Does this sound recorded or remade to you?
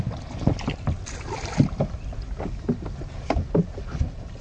recorded